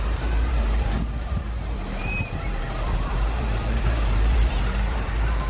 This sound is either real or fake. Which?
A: fake